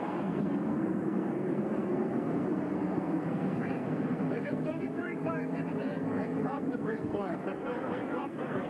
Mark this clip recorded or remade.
remade